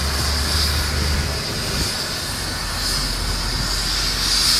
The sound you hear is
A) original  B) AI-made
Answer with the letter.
A